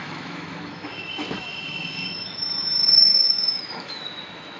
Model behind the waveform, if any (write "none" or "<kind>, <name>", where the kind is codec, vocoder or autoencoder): autoencoder, DAC-VAE